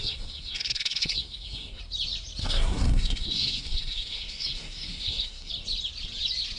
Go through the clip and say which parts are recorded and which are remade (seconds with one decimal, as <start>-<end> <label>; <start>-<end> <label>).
0.0-1.8 remade; 1.8-2.4 recorded; 2.4-5.5 remade; 5.5-6.6 recorded